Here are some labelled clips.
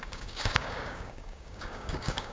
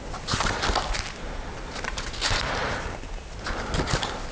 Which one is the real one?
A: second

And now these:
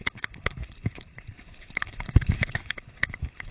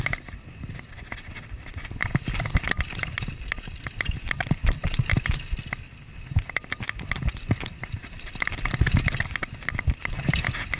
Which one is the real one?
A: second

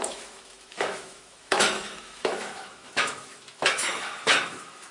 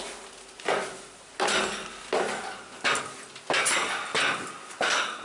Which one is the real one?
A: second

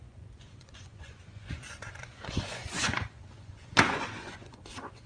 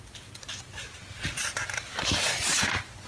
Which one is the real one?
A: second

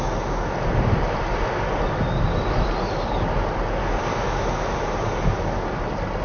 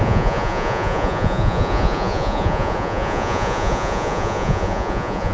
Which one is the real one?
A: first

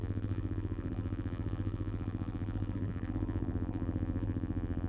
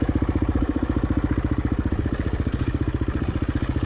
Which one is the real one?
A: second